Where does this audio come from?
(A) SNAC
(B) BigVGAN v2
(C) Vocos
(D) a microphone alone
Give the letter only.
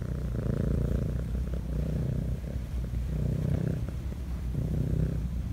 B